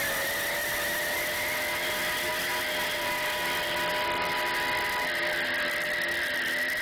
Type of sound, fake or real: real